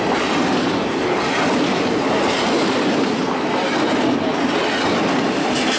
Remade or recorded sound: recorded